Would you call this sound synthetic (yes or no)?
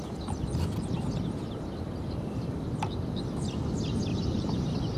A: no